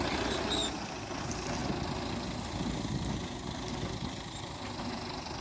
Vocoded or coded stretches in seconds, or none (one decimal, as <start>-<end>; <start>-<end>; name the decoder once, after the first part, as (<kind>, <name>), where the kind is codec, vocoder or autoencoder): 0.0-0.6 (vocoder, BigVGAN v2); 1.2-1.6; 4.8-5.4